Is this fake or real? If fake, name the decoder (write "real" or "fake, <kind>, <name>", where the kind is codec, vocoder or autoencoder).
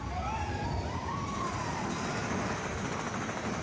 real